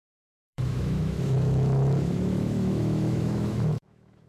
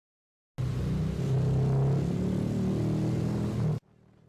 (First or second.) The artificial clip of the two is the first